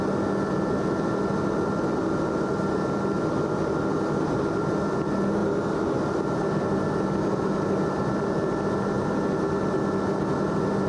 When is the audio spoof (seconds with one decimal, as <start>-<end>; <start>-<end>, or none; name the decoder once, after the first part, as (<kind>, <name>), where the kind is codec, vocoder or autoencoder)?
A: none